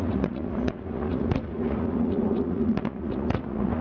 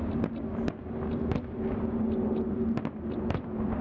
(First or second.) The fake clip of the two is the first